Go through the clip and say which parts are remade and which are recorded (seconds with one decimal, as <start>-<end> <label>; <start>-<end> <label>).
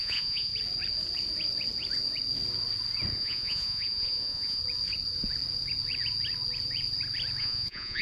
0.0-0.5 remade; 0.5-3.1 recorded; 3.1-4.6 remade; 4.6-7.4 recorded; 7.4-8.0 remade